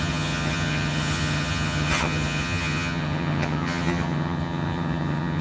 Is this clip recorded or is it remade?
remade